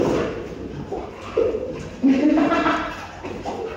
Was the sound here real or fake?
fake